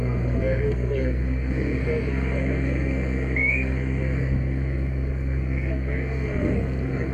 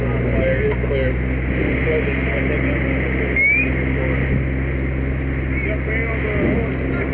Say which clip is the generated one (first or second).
first